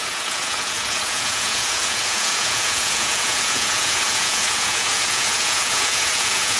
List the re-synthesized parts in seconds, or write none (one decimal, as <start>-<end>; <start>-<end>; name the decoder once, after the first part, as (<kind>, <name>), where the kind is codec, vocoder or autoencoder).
0.0-6.6 (vocoder, Vocos)